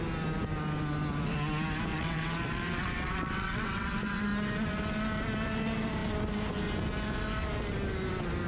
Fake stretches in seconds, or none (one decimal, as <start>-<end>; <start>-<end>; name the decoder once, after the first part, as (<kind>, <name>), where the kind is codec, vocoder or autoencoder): 1.9-4.2 (vocoder, WaveNeXt)